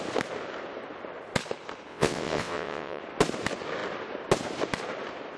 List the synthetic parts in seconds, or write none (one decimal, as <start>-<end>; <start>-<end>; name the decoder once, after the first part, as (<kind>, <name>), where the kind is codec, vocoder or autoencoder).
1.9-3.0 (vocoder, WaveNeXt)